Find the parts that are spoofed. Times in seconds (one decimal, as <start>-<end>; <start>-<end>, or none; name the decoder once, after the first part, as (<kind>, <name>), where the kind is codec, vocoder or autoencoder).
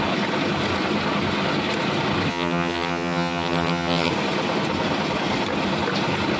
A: 2.3-4.1 (vocoder, HiFi-GAN)